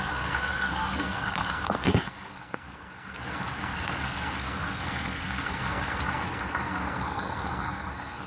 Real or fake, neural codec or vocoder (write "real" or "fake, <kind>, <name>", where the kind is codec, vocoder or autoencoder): fake, codec, SNAC